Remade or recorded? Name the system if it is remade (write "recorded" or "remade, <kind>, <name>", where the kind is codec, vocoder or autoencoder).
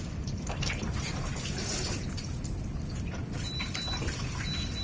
remade, vocoder, BigVGAN v2